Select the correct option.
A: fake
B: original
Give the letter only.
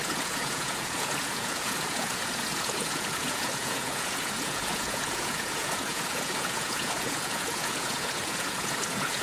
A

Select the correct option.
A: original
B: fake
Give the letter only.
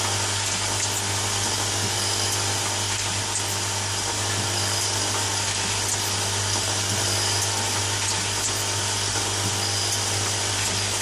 A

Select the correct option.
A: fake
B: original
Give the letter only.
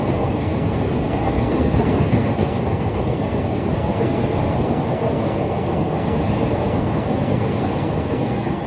A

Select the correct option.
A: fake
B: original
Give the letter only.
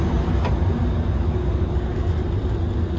B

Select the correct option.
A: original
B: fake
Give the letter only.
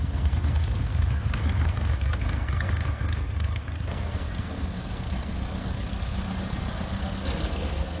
B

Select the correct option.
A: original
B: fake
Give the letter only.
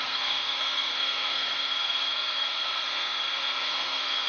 B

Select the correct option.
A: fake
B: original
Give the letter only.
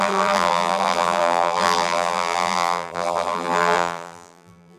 A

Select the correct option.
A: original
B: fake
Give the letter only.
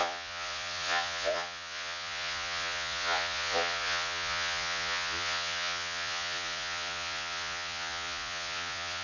B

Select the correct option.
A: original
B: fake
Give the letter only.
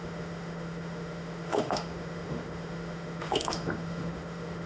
B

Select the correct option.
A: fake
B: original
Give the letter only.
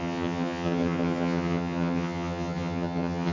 A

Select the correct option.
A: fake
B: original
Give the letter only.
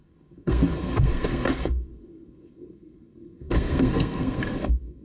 A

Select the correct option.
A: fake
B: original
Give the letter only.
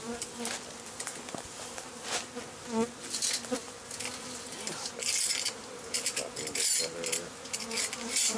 B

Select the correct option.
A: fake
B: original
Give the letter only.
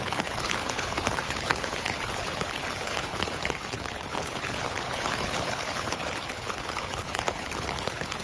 A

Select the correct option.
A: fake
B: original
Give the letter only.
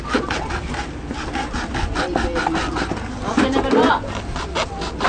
B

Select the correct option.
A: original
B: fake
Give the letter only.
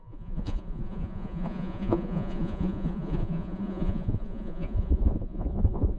B